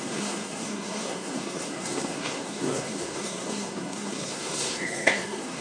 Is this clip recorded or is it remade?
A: remade